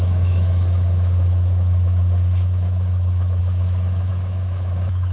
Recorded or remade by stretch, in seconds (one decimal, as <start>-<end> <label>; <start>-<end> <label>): 0.0-5.1 remade